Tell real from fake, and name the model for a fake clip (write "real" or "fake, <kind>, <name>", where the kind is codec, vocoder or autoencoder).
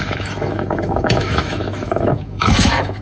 fake, autoencoder, DAC-VAE